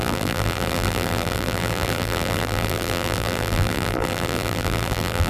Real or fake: fake